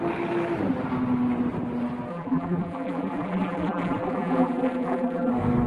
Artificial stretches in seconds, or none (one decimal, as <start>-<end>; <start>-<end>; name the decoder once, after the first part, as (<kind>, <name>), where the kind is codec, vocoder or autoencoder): 2.1-5.3 (vocoder, BigVGAN v2)